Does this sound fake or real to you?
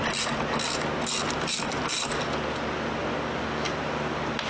real